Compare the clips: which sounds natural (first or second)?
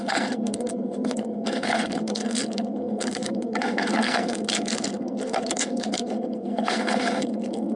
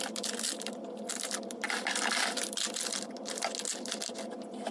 second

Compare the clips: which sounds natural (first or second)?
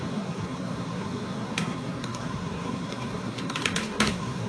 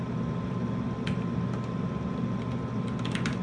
second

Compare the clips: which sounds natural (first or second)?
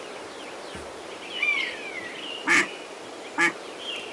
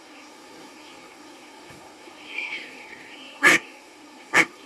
first